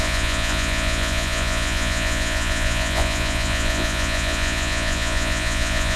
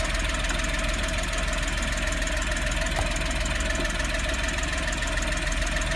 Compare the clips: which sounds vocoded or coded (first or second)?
first